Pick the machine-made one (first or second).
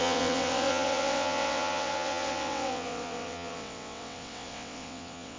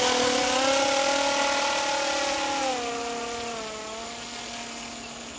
first